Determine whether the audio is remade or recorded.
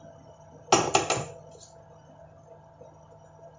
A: recorded